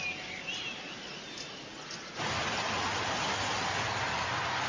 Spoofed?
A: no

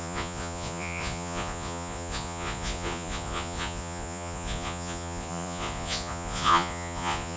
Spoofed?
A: yes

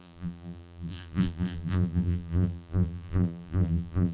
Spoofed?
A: yes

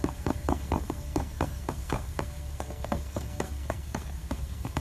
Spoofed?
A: yes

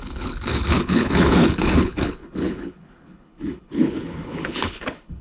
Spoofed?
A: yes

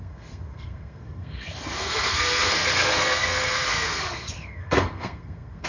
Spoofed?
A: yes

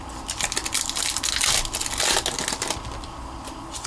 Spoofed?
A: no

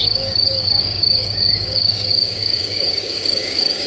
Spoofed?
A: yes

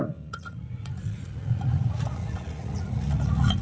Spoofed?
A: yes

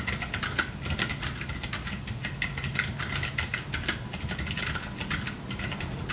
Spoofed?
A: no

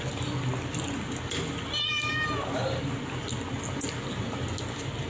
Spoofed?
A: no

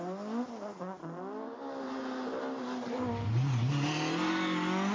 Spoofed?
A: no